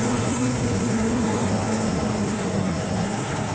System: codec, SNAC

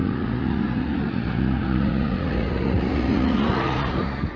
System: vocoder, Vocos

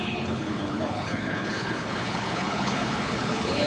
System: codec, HILCodec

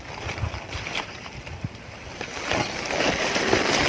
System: vocoder, BigVGAN v2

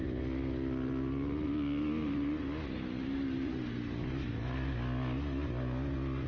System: none